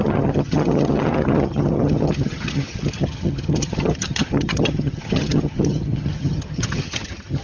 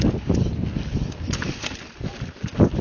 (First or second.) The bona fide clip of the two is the second